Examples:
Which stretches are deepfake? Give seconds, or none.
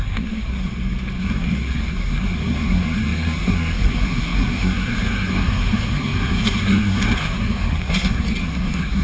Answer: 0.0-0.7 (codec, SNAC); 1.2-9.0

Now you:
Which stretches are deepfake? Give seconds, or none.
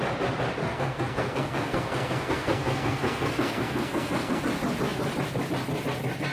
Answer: 0.6-4.4 (codec, SNAC)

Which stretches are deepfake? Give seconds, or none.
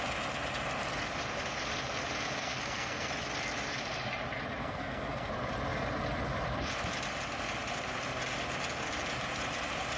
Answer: 2.4-3.1 (codec, SNAC); 4.6-5.3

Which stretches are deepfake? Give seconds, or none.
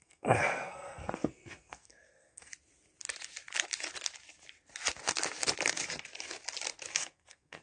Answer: 0.0-2.5 (codec, SNAC); 6.9-7.6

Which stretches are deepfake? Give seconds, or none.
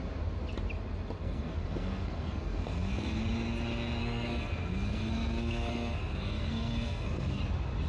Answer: 1.2-3.2 (codec, SNAC); 4.0-7.4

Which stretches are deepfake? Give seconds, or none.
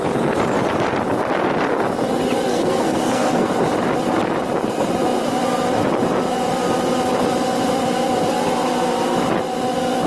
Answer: 2.5-3.5 (codec, SNAC)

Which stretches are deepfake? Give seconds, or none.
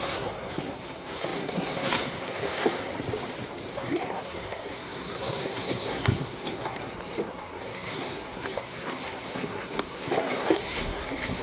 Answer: 0.0-2.9 (codec, SNAC); 3.7-11.4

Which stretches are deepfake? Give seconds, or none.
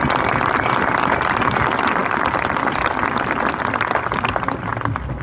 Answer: none